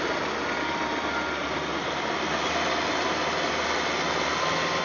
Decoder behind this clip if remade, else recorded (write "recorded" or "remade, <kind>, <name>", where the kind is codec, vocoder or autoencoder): recorded